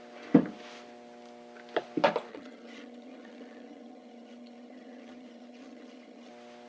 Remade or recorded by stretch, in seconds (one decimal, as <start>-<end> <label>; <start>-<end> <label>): 0.0-2.3 recorded; 2.3-6.3 remade; 6.3-6.7 recorded